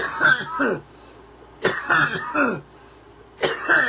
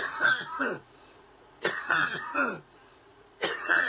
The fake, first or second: second